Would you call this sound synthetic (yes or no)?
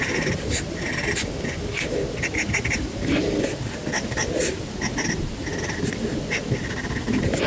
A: no